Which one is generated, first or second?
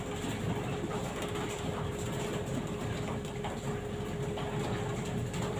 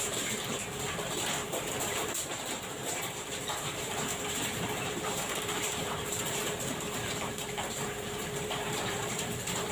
second